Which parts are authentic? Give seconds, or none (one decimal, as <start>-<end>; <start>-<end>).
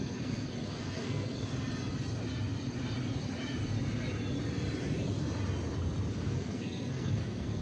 1.5-6.1